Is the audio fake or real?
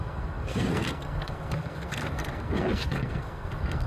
fake